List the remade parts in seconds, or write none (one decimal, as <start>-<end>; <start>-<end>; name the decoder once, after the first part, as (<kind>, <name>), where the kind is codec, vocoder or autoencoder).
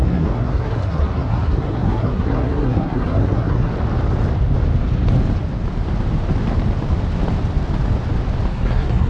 0.0-3.7 (codec, SNAC); 8.5-9.1